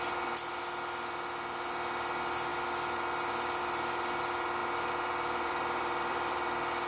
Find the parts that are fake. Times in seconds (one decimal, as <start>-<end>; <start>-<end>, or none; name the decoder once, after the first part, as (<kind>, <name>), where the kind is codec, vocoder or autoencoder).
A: 4.6-6.9 (vocoder, BigVGAN v2)